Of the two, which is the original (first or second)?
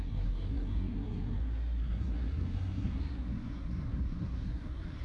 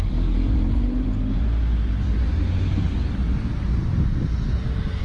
second